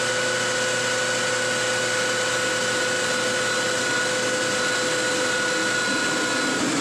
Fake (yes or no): no